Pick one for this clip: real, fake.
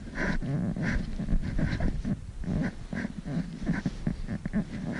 real